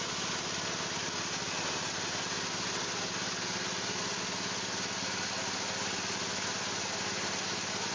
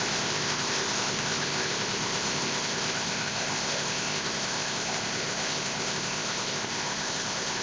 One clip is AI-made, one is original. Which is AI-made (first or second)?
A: second